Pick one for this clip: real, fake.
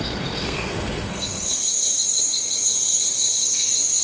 fake